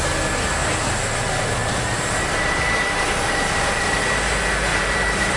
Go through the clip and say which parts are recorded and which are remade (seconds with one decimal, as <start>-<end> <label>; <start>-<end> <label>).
0.0-0.6 recorded; 0.6-3.7 remade; 3.7-4.7 recorded; 4.7-5.4 remade